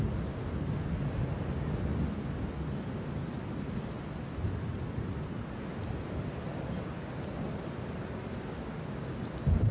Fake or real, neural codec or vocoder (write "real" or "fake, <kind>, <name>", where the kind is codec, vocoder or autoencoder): real